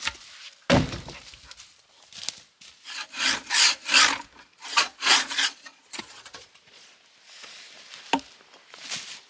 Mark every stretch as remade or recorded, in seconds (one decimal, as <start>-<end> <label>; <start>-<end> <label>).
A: 0.0-4.6 recorded; 4.6-6.9 remade; 6.9-9.3 recorded